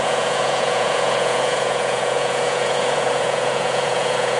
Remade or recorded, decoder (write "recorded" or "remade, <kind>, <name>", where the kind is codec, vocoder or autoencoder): remade, vocoder, Vocos